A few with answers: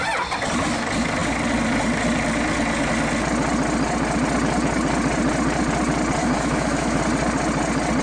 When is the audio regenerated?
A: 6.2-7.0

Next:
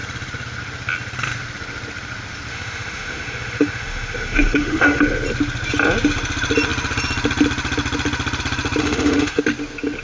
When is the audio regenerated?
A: 2.5-5.0; 8.8-9.4

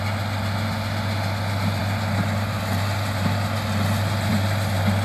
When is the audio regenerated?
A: none

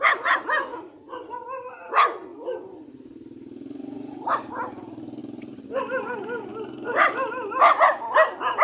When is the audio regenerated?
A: 2.3-4.5; 5.2-5.8; 6.5-7.3

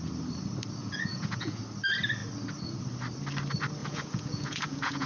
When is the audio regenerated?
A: 0.8-1.6; 3.8-5.1

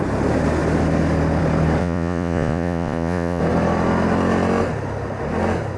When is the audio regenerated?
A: 1.8-3.4